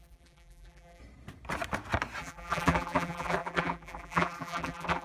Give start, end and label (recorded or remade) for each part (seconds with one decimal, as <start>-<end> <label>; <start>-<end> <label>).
0.0-1.0 remade; 1.0-2.2 recorded; 2.2-5.0 remade